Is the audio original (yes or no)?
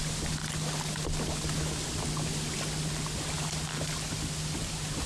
yes